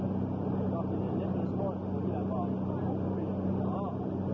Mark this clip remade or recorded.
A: recorded